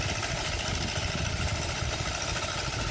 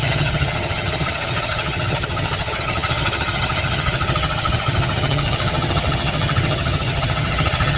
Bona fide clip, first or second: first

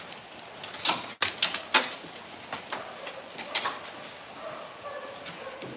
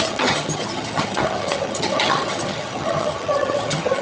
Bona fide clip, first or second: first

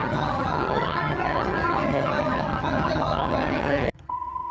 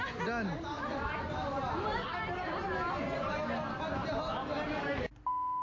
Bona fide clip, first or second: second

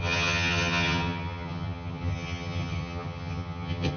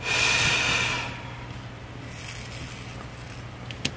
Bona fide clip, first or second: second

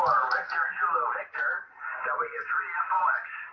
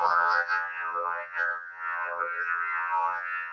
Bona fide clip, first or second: first